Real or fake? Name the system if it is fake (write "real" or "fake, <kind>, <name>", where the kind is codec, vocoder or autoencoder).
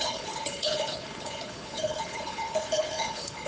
fake, codec, HILCodec